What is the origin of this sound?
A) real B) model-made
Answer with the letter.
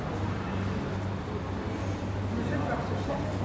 A